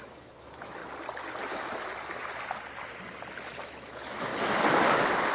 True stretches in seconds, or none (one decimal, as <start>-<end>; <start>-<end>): 0.8-1.4; 1.9-3.6; 4.3-5.3